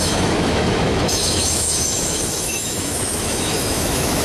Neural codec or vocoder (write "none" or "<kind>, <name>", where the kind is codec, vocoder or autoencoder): autoencoder, DAC-VAE